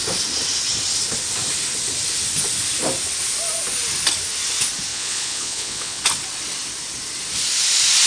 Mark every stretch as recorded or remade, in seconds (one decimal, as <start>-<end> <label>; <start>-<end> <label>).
0.0-4.9 recorded; 4.9-6.0 remade; 6.0-8.1 recorded